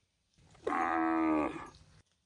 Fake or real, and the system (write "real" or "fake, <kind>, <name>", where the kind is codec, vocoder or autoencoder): real